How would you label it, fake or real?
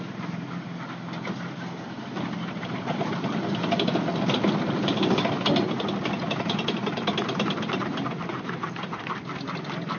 real